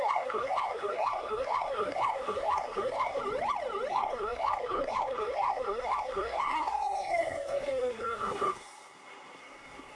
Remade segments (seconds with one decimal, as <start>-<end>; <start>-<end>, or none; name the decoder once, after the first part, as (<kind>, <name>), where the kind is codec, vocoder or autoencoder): 0.0-3.2 (codec, SNAC); 3.9-10.0